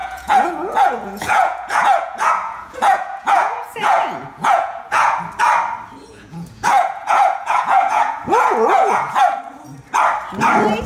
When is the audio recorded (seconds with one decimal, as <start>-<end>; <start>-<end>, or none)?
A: 5.2-6.1; 9.4-10.9